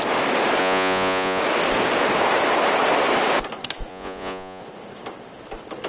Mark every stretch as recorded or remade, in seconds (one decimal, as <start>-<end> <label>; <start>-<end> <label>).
0.0-0.6 recorded; 0.6-1.4 remade; 1.4-3.9 recorded; 3.9-4.6 remade; 4.6-5.9 recorded